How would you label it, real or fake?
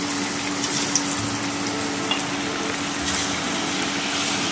real